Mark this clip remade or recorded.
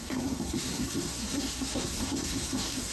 remade